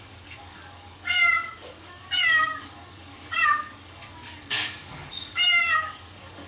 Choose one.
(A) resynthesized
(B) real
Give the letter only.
A